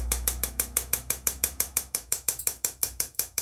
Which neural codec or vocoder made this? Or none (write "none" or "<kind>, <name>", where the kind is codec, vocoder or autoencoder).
autoencoder, DAC-VAE